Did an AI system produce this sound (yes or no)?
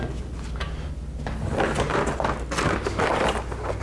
no